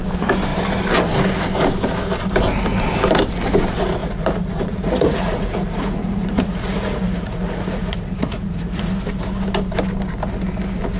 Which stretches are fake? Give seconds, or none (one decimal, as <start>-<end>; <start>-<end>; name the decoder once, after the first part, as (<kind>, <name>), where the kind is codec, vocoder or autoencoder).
4.0-8.9 (vocoder, Vocos)